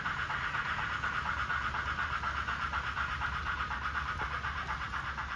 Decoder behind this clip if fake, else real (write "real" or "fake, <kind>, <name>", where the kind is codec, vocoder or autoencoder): fake, vocoder, BigVGAN v2